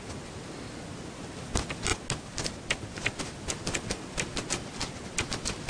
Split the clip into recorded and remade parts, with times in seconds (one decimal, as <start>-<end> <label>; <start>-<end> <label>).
0.0-5.7 recorded